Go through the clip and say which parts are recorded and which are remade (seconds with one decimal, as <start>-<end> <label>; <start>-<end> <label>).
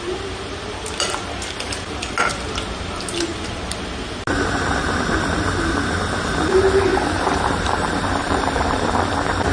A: 0.0-6.9 recorded; 6.9-8.8 remade; 8.8-9.5 recorded